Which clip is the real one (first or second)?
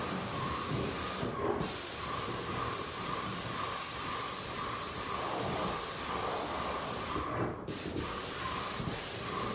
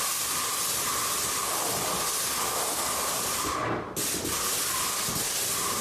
second